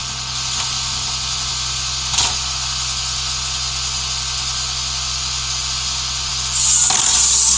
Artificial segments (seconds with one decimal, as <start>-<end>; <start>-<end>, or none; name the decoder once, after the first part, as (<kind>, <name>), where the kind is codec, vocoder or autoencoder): 6.3-7.6 (vocoder, BigVGAN v2)